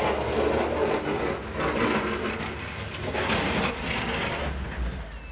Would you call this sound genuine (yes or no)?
yes